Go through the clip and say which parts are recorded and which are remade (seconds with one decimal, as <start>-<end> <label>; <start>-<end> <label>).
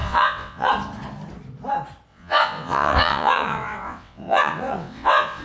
0.0-0.7 remade; 0.7-2.1 recorded; 2.1-5.4 remade